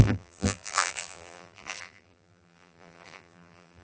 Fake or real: fake